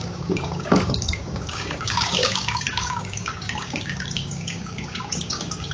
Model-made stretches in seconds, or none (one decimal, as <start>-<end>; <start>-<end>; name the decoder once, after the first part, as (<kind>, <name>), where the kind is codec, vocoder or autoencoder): 0.0-5.7 (codec, DAC)